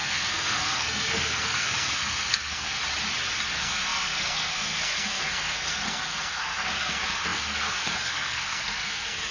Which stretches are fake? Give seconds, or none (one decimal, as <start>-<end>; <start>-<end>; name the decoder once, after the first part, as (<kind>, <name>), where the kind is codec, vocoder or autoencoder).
0.0-2.8 (codec, SNAC); 3.5-9.3